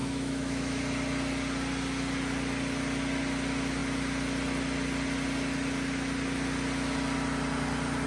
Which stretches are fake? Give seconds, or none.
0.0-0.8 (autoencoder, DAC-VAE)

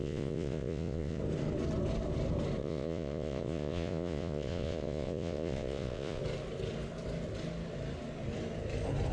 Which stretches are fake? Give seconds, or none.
0.0-1.2 (vocoder, Vocos); 2.6-6.2

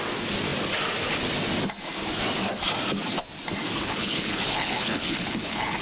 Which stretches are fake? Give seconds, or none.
3.8-5.8 (codec, HILCodec)